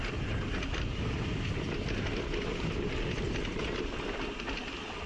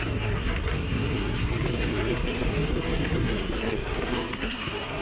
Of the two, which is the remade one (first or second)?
second